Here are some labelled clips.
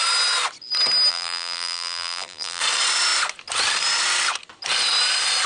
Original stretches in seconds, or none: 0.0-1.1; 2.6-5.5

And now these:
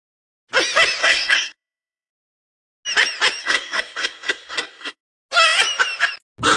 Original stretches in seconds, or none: 0.0-1.0; 2.1-3.4; 5.0-6.6